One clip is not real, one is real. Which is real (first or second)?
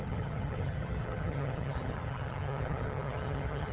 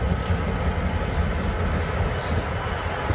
second